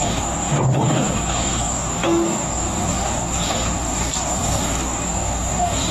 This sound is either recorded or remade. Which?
remade